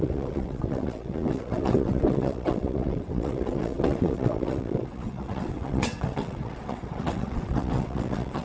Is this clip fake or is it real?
fake